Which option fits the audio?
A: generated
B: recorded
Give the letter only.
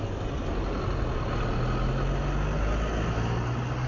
B